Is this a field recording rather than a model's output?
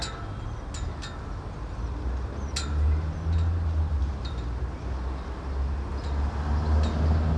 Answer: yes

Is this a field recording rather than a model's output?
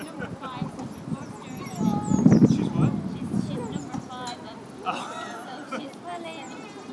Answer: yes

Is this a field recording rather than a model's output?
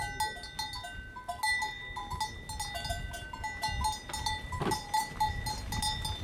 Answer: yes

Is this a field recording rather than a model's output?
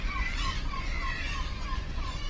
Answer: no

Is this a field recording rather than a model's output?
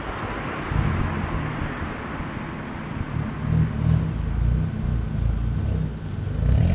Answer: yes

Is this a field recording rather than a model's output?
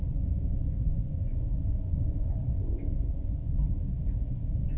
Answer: no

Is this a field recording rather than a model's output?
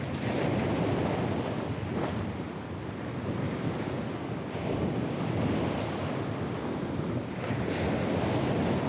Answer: yes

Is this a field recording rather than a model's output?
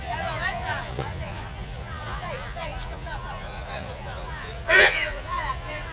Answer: no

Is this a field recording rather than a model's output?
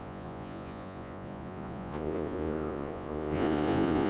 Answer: no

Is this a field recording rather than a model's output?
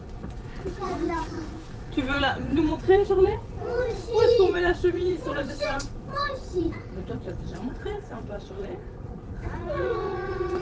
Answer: no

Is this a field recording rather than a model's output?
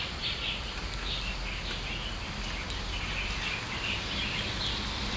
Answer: yes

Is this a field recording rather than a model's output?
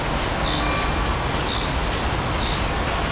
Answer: yes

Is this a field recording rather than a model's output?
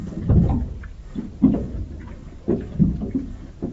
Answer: yes